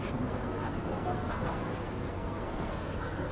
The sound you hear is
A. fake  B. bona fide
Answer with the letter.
A